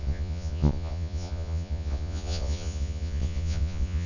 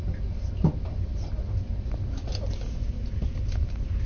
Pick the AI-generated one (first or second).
first